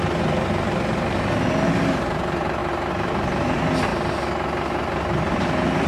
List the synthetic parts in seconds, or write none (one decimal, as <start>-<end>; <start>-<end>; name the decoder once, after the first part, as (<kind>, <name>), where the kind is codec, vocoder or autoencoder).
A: none